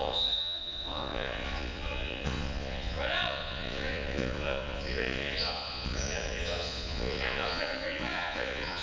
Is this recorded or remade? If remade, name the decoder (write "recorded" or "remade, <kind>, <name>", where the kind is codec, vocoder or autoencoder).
remade, vocoder, Vocos